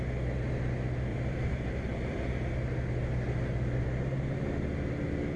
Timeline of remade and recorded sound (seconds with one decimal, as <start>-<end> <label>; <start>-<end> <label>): 0.0-1.1 recorded; 1.1-2.5 remade; 2.5-5.4 recorded